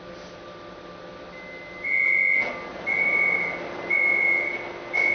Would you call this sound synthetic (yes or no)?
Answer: no